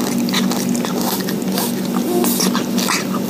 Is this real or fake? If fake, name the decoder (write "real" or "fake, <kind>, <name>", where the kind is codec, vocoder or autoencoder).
real